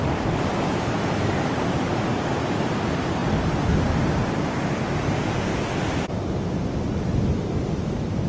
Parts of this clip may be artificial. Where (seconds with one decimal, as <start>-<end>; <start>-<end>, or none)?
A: none